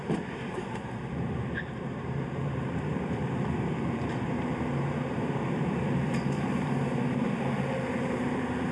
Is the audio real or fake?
fake